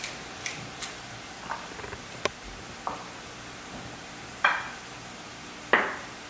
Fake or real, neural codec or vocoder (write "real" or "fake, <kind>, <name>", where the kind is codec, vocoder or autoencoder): real